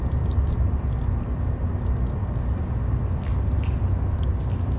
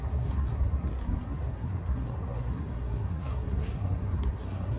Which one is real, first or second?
first